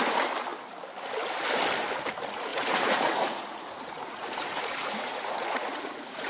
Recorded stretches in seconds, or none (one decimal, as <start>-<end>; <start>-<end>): 0.0-2.5